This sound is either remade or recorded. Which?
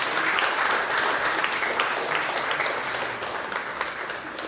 recorded